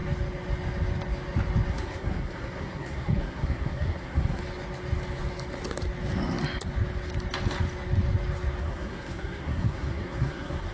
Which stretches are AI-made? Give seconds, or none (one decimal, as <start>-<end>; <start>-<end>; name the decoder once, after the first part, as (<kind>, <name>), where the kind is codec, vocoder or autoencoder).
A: 1.7-4.4 (codec, SNAC); 8.6-10.7